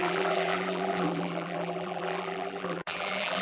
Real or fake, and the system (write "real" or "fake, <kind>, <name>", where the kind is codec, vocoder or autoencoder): fake, vocoder, BigVGAN v2